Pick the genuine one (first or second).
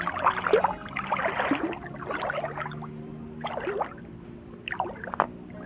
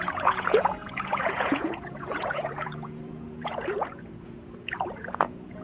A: first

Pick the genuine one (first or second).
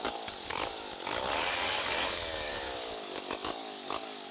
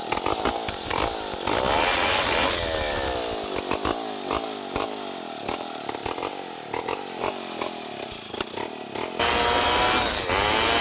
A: second